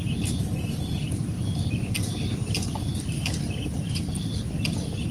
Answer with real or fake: real